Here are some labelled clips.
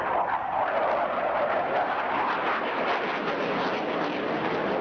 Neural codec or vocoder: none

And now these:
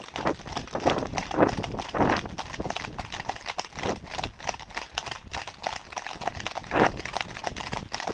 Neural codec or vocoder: none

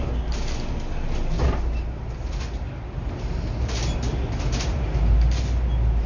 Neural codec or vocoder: none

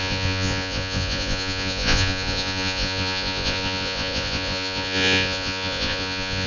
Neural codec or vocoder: vocoder, Vocos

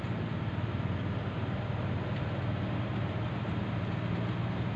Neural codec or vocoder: none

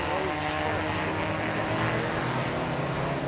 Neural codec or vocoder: none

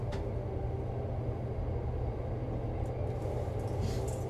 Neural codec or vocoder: none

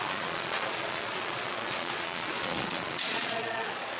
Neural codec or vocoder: vocoder, Vocos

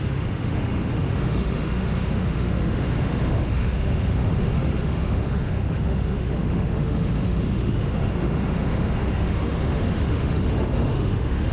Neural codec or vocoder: autoencoder, DAC-VAE